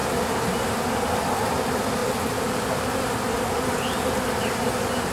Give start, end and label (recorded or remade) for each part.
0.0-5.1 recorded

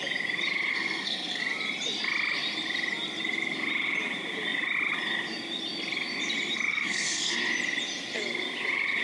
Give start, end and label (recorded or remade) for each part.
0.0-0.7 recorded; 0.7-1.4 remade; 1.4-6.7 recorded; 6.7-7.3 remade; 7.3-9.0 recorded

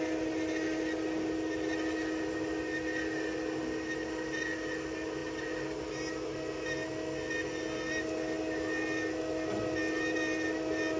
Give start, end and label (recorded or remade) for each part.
0.0-11.0 recorded

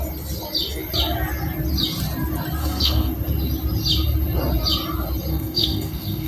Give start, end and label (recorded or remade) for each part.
0.0-2.6 recorded; 2.6-3.1 remade; 3.1-5.3 recorded; 5.3-6.3 remade

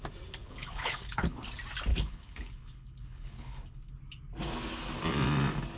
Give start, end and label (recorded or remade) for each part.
0.0-0.4 recorded; 0.4-1.4 remade; 1.4-1.9 recorded; 1.9-3.9 remade; 3.9-5.8 recorded

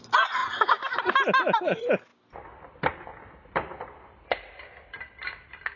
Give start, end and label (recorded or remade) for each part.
0.0-5.8 recorded

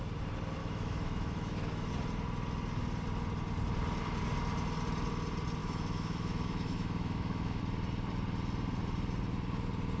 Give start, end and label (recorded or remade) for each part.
0.0-0.6 recorded; 0.6-1.9 remade; 1.9-5.6 recorded; 5.6-7.6 remade; 7.6-10.0 recorded

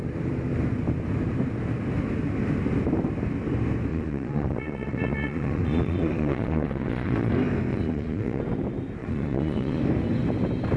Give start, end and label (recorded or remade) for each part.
0.0-3.9 recorded; 3.9-7.3 remade; 7.3-7.7 recorded; 7.7-8.4 remade; 8.4-9.0 recorded; 9.0-9.8 remade; 9.8-10.8 recorded